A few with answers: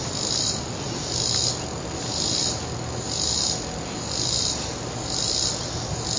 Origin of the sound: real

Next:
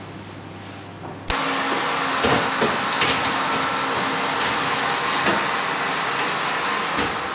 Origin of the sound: real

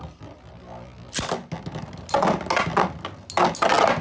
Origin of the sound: real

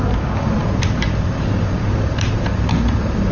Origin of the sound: fake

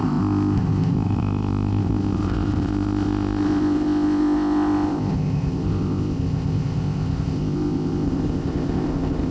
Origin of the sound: fake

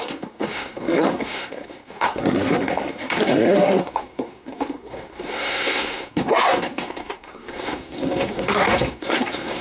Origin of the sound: fake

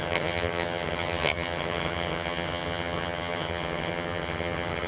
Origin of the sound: fake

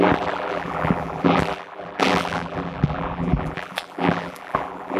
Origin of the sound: fake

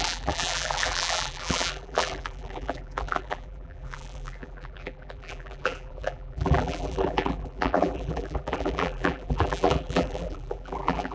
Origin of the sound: fake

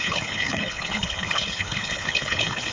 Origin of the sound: fake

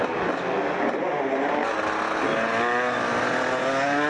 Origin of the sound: real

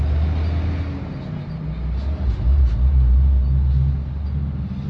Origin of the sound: real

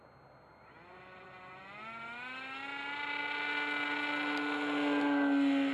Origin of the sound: real